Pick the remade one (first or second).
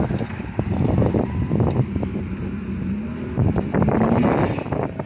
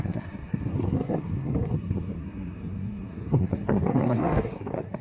second